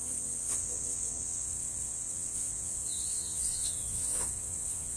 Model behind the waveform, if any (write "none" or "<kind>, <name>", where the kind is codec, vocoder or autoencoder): vocoder, WaveNeXt